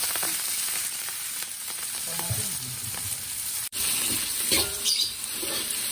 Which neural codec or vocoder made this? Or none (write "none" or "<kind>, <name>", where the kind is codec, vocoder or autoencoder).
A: vocoder, BigVGAN v2